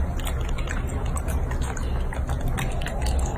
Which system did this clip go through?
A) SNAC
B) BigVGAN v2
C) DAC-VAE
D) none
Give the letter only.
D